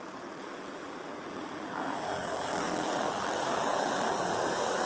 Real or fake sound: fake